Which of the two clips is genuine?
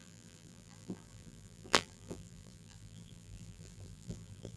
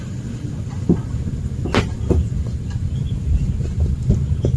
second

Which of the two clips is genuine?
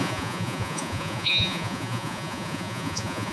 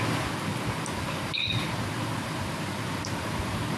second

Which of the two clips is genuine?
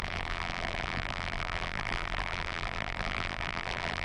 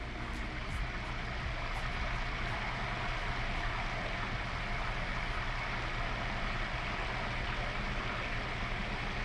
second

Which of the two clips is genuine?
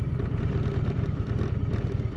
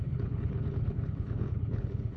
first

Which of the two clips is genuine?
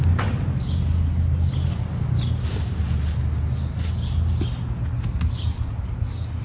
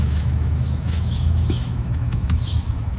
first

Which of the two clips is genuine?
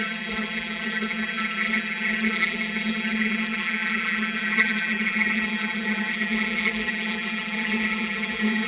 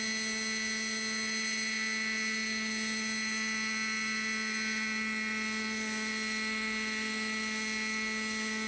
second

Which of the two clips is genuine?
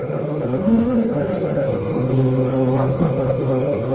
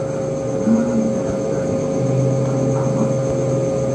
second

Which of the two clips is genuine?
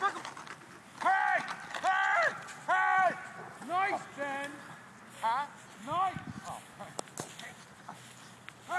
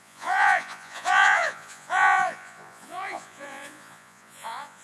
first